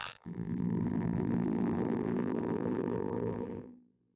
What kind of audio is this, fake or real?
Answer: fake